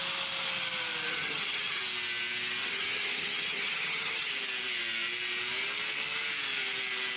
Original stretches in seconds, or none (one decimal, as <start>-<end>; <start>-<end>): 0.0-1.1; 1.8-2.6; 4.3-7.2